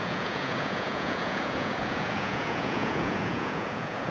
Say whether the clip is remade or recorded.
remade